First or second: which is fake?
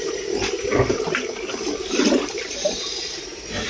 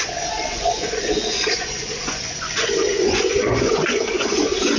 second